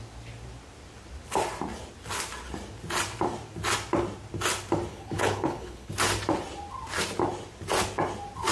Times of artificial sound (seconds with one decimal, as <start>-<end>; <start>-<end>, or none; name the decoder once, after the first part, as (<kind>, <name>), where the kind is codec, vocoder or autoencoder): 4.9-5.9 (codec, HILCodec)